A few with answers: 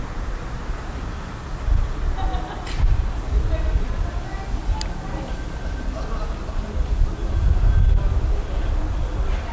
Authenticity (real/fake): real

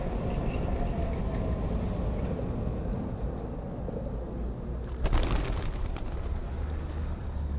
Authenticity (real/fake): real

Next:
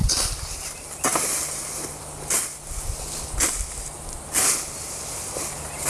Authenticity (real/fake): real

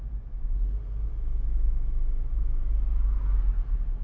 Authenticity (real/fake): real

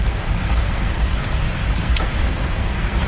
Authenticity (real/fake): fake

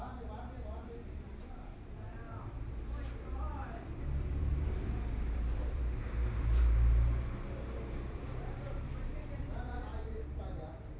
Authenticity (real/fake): fake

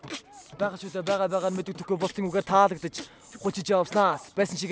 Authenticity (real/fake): real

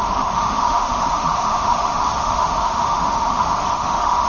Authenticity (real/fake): fake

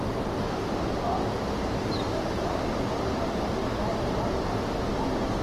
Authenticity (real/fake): fake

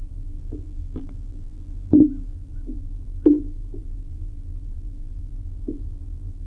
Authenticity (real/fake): fake